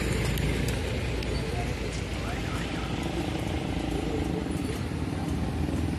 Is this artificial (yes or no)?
no